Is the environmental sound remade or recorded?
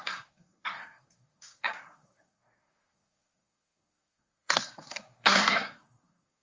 remade